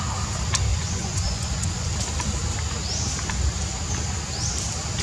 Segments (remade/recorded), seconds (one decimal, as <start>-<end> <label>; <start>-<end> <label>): 0.0-0.7 recorded; 0.7-1.9 remade; 1.9-5.0 recorded